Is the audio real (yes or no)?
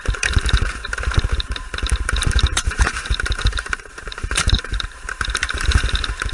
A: no